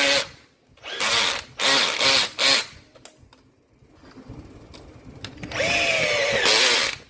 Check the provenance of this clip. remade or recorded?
recorded